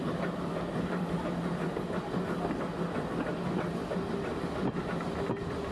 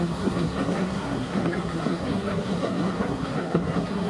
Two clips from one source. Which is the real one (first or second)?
first